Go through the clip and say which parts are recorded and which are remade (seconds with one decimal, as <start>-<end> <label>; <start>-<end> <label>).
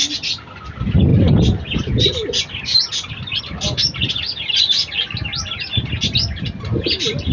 0.0-7.3 recorded